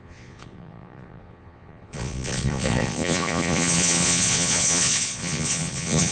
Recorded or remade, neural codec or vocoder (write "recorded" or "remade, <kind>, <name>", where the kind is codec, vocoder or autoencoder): remade, vocoder, Vocos